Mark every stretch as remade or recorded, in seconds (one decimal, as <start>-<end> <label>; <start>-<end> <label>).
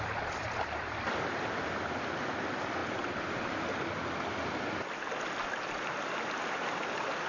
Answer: 0.0-7.3 recorded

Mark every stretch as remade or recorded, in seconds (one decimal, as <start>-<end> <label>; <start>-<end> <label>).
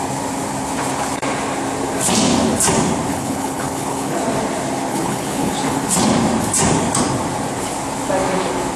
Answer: 0.0-3.1 recorded; 3.1-4.2 remade; 4.2-4.9 recorded; 4.9-5.9 remade; 5.9-8.8 recorded